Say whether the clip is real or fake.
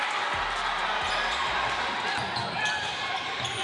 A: real